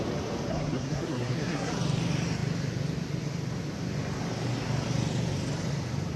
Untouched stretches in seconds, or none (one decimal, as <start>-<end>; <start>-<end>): 0.0-0.5; 1.7-6.2